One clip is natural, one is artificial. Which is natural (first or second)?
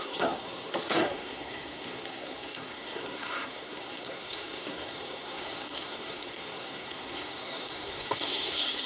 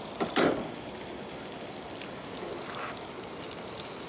second